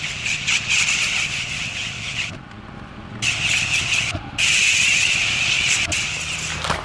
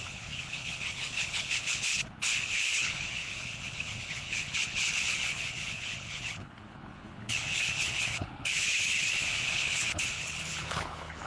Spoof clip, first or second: second